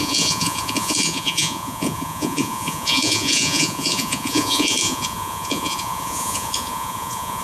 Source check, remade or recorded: remade